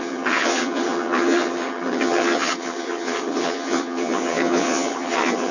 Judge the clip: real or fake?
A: fake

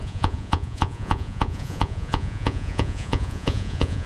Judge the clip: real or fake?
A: fake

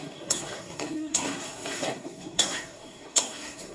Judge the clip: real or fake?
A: fake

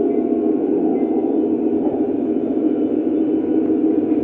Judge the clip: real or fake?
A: real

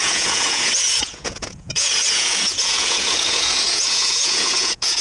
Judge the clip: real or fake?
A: fake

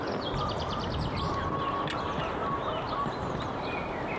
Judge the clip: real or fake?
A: real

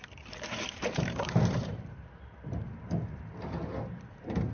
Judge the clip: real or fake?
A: fake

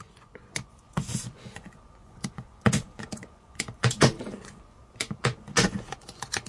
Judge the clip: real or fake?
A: fake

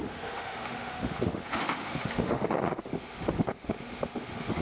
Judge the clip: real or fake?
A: fake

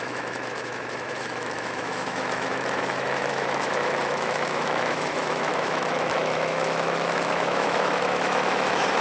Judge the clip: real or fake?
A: fake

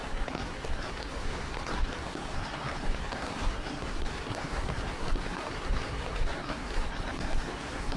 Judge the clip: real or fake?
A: fake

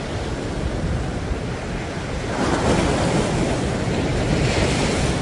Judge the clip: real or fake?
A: real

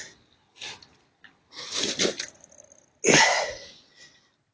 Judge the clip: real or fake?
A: real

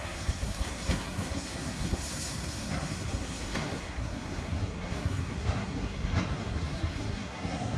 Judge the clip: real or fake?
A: fake